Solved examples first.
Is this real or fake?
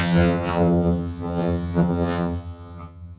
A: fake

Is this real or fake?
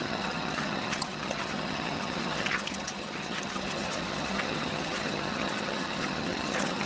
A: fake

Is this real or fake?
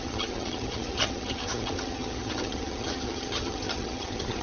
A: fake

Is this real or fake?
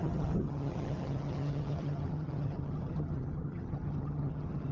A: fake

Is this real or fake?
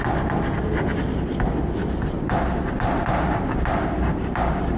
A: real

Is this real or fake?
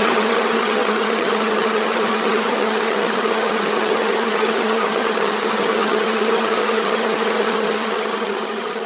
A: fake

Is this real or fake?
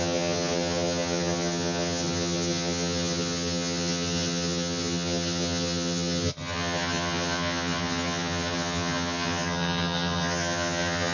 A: fake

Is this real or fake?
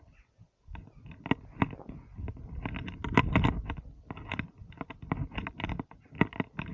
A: real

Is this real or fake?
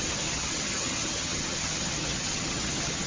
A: fake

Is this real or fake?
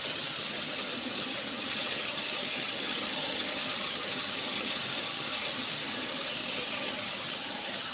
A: fake